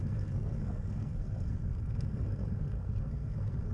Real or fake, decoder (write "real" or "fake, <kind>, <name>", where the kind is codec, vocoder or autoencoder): fake, codec, SNAC